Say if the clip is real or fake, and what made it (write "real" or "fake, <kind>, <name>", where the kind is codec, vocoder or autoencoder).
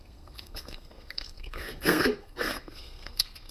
fake, codec, SNAC